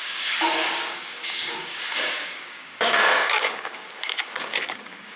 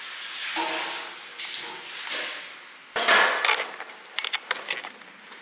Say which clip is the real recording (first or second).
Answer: second